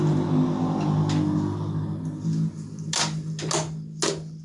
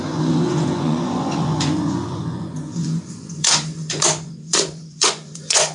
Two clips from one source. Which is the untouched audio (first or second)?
first